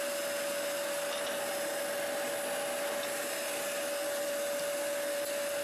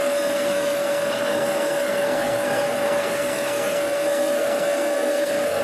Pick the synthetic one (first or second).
second